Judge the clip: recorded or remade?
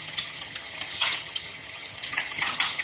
remade